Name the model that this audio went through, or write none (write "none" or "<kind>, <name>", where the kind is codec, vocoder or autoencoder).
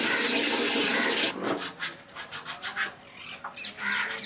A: none